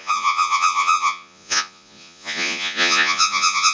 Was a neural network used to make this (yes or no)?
yes